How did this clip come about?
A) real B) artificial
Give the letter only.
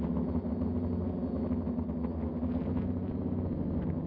A